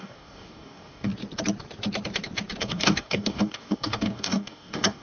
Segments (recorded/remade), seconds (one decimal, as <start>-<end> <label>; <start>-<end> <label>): 0.0-1.1 remade; 1.1-2.6 recorded; 2.6-5.0 remade